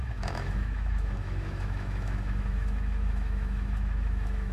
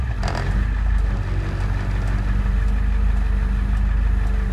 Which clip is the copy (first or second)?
first